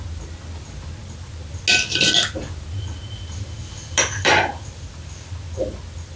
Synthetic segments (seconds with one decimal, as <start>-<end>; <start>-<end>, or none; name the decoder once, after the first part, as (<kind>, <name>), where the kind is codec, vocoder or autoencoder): 3.6-4.3 (vocoder, BigVGAN v2)